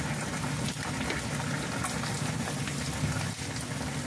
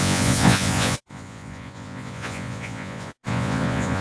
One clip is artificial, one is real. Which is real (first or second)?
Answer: first